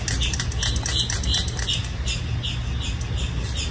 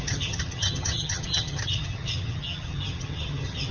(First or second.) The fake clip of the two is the second